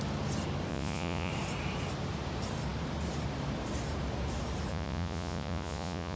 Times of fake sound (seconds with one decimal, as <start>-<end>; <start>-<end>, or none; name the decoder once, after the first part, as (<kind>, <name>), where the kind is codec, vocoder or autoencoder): 0.7-1.3 (vocoder, Vocos); 4.7-6.2

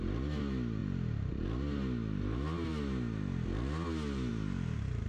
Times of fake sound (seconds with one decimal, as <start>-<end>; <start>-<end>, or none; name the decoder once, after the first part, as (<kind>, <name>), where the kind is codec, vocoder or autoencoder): none